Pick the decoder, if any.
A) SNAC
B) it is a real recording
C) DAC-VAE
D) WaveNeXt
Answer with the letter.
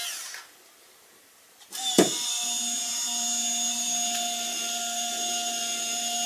B